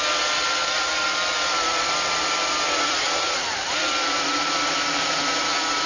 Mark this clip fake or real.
real